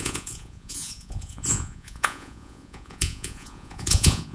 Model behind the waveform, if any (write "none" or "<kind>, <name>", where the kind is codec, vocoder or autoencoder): vocoder, Vocos